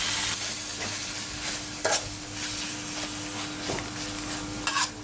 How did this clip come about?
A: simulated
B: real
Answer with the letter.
B